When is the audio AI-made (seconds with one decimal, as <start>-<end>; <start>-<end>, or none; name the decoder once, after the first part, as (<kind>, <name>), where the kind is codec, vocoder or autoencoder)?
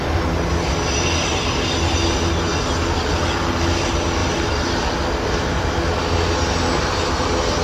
4.2-4.8 (vocoder, BigVGAN v2)